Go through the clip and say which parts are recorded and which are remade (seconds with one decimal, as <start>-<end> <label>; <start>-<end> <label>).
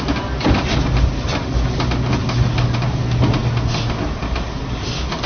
0.0-2.2 recorded; 2.2-3.0 remade; 3.0-5.3 recorded